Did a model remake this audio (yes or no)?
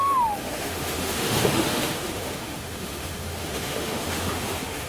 yes